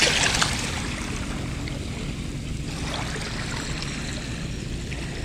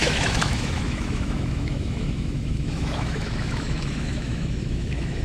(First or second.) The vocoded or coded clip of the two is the second